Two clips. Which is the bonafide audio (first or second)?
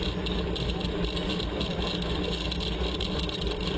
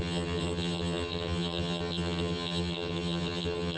first